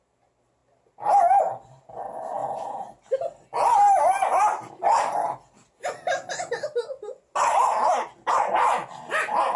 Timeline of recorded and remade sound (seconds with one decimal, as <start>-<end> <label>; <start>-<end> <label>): 0.0-9.6 recorded